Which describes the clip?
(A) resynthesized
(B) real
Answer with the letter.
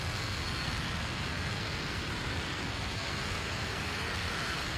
A